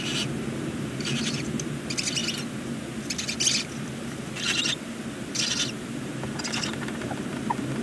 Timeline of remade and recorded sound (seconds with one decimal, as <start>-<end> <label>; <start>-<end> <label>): 0.0-7.8 recorded